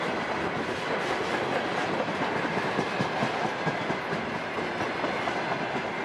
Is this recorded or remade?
recorded